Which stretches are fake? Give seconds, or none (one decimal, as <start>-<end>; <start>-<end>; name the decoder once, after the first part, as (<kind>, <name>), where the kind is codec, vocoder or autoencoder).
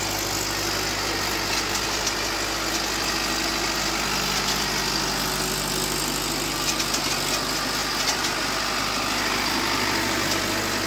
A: none